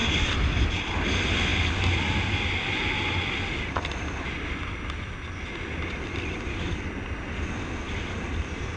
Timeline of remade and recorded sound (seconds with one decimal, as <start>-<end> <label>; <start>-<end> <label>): 0.0-8.8 recorded